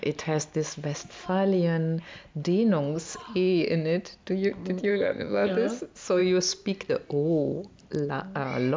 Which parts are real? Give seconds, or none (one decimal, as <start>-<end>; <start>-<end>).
0.0-4.9; 5.5-8.8